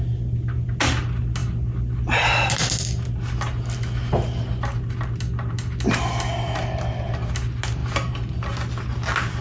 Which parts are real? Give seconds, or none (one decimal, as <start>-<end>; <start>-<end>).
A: 0.0-7.8; 8.3-9.4